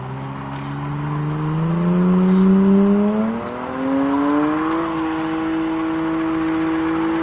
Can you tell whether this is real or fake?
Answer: real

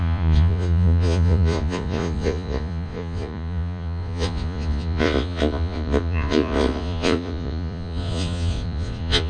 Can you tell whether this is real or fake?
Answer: fake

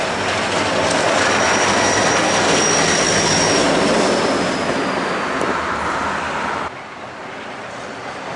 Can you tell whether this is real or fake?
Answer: real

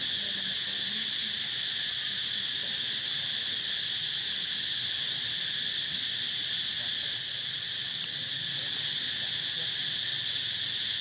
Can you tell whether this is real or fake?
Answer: real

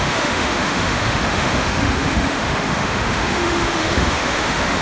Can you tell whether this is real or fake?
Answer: fake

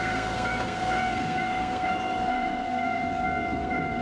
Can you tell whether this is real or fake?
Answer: fake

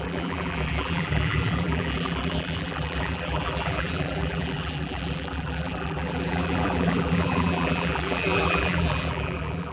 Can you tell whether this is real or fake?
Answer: fake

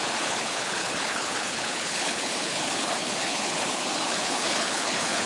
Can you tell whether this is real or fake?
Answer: fake